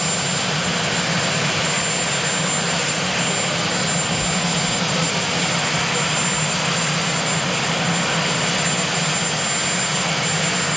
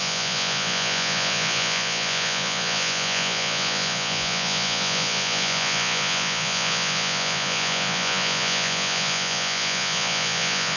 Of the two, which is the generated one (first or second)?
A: second